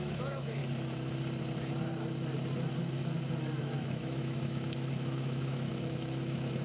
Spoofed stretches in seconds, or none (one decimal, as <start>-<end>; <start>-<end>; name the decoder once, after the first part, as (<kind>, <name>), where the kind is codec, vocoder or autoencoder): 0.0-0.6 (autoencoder, DAC-VAE); 3.6-6.6